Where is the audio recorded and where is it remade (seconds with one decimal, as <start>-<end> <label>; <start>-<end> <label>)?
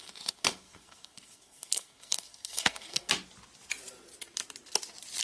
0.0-3.1 remade; 3.1-5.2 recorded